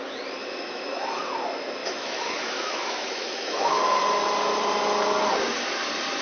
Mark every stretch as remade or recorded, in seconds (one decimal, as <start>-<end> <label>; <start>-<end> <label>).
0.0-0.4 recorded; 0.4-1.2 remade; 1.2-1.8 recorded; 1.8-4.0 remade; 4.0-6.2 recorded